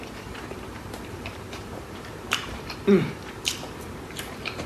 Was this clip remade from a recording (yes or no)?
yes